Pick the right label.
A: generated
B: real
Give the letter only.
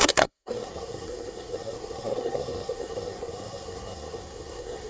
A